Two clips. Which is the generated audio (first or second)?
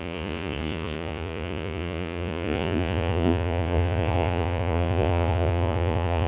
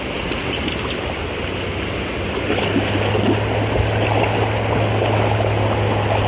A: first